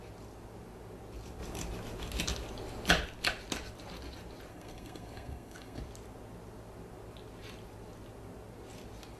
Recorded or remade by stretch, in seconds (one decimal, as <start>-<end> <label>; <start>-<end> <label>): 0.0-4.5 recorded; 4.5-5.8 remade; 5.8-9.2 recorded